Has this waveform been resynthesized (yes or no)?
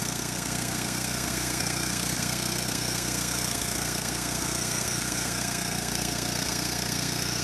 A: yes